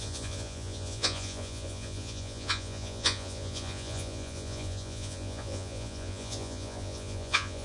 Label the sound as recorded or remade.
remade